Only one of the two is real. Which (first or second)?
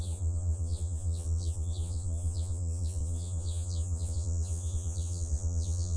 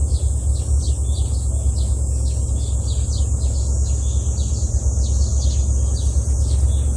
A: second